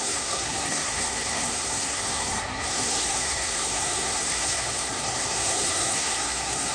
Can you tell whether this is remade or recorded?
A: remade